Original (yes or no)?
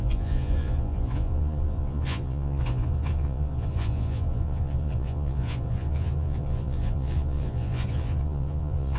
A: no